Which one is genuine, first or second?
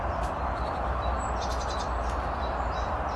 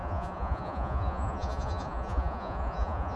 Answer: first